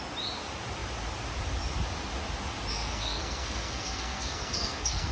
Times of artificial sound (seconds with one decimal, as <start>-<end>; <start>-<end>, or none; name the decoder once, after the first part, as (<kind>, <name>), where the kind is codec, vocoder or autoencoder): 2.7-5.1 (codec, SNAC)

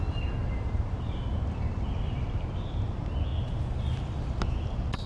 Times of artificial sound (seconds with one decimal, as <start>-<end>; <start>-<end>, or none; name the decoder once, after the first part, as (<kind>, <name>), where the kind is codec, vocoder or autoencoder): 0.4-2.8 (vocoder, BigVGAN v2)

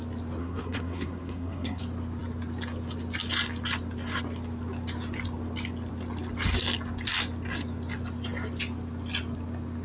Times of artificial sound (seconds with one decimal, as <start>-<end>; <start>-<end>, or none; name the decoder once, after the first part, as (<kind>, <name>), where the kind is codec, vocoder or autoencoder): 0.4-1.8 (codec, SNAC)

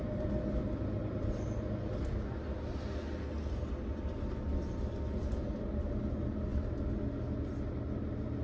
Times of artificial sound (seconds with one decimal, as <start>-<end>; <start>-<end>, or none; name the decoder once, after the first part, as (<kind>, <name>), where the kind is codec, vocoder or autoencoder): none

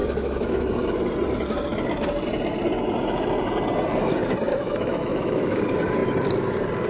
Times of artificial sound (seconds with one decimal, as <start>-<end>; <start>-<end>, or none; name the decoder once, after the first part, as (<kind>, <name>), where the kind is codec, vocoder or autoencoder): 0.0-0.7 (autoencoder, DAC-VAE); 4.5-5.6

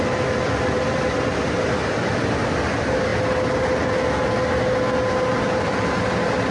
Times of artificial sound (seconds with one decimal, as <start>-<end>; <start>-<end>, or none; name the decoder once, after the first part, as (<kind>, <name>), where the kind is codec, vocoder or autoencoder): none

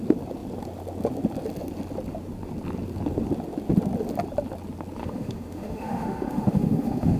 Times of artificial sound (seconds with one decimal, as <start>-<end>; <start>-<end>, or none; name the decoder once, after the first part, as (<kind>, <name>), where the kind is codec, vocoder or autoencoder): 5.0-7.2 (autoencoder, DAC-VAE)

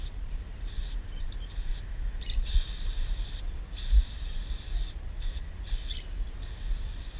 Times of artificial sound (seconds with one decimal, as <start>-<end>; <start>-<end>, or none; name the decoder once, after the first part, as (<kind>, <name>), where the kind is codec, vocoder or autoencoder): none